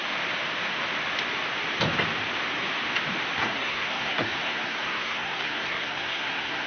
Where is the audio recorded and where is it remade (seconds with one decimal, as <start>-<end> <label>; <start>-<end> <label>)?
0.0-3.4 recorded; 3.4-6.7 remade